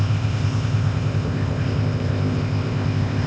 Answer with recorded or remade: remade